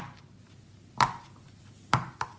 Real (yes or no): yes